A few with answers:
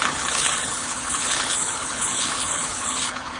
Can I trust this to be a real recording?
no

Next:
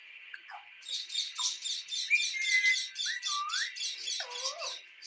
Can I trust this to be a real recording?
yes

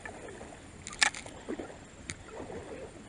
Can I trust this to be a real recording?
yes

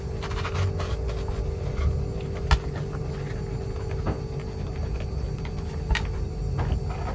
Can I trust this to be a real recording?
yes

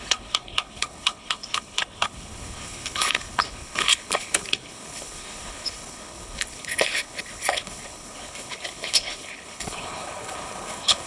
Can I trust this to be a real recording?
no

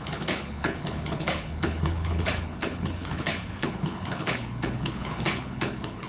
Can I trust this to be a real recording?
no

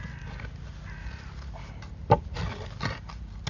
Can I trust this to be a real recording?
yes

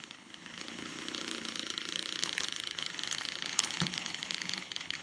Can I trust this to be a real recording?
no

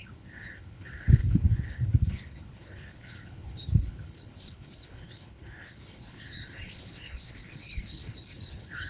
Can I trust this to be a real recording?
no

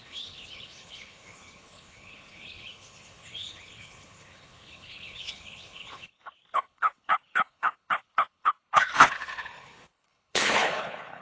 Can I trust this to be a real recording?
no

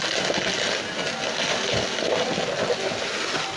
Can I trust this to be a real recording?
yes